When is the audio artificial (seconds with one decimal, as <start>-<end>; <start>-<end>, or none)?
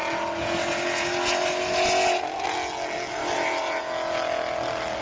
3.2-3.8